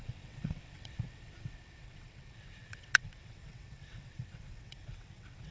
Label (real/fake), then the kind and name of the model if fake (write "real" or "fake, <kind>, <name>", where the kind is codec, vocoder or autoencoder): fake, vocoder, WaveNeXt